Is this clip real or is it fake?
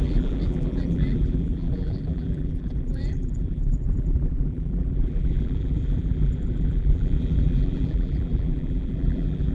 fake